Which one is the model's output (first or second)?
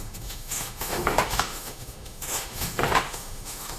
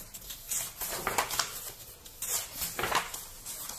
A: first